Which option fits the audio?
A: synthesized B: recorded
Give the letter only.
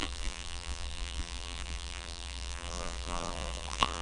A